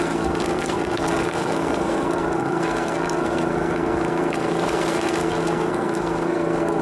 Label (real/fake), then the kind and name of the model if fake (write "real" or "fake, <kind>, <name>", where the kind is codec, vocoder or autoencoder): fake, codec, SNAC